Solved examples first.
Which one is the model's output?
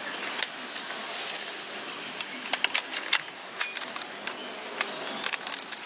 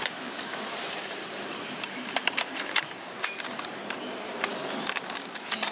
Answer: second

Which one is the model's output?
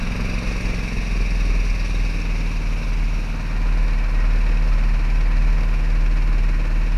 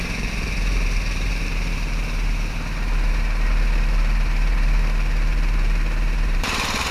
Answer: second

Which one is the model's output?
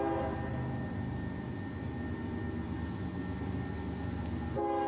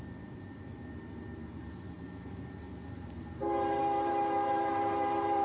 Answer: second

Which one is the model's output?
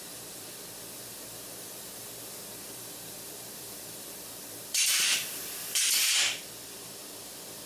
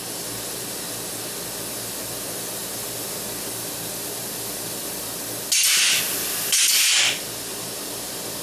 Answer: first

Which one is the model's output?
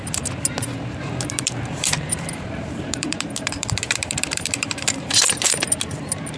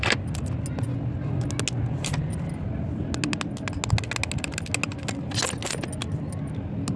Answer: first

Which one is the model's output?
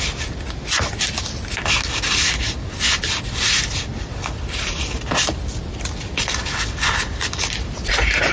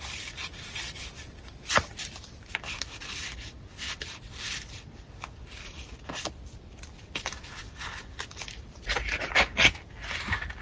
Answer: second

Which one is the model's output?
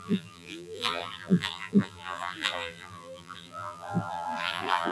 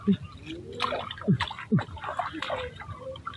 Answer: first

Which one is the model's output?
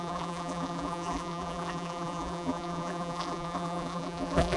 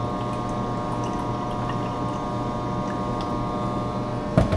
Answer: first